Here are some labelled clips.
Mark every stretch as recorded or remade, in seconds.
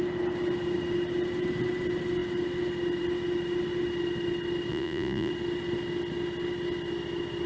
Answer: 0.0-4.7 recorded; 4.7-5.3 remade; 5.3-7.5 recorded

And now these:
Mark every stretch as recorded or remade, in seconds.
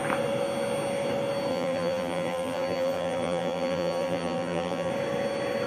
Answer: 0.0-1.5 recorded; 1.5-4.9 remade; 4.9-5.7 recorded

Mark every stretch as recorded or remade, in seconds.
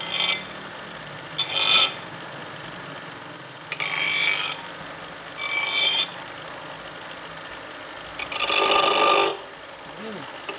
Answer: 0.0-10.6 recorded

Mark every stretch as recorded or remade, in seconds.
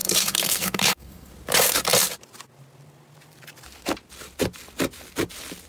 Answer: 0.0-1.3 remade; 1.3-5.7 recorded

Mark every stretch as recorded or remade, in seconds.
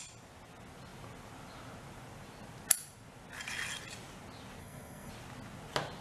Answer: 0.0-4.6 recorded; 4.6-5.1 remade; 5.1-6.0 recorded